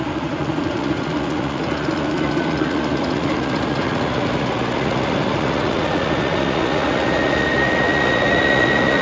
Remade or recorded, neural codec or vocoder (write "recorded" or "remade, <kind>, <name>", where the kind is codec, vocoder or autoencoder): remade, vocoder, Vocos